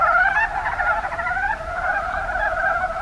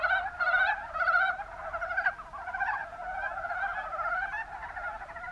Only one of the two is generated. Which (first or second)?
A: first